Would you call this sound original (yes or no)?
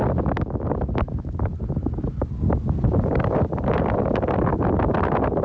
yes